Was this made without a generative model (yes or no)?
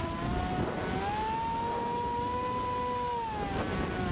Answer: yes